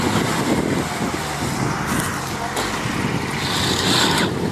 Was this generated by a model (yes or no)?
no